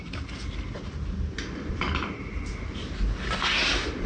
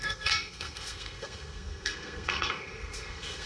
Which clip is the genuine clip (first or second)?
first